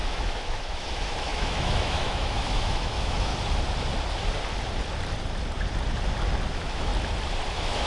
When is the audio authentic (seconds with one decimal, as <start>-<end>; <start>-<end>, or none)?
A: 3.3-6.5; 6.9-7.5